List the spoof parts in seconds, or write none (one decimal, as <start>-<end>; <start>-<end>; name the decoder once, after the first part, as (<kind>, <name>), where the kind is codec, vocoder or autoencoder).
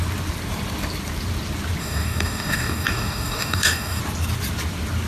1.8-4.0 (codec, DAC)